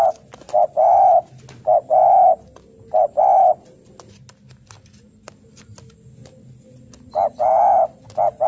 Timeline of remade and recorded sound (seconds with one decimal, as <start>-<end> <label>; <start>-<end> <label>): 0.0-8.5 recorded